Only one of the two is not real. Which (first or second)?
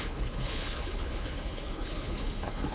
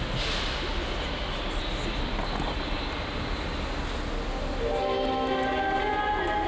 first